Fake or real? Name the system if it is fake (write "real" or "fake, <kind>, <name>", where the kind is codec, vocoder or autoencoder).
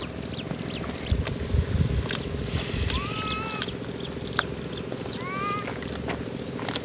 real